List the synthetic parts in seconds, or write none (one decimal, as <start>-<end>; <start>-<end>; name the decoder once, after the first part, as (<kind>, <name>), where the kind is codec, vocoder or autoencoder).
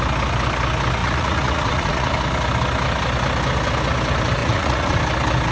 1.0-2.1 (vocoder, Vocos); 4.4-5.0